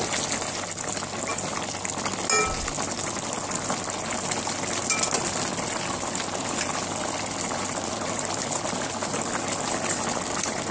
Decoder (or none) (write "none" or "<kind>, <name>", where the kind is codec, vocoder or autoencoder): none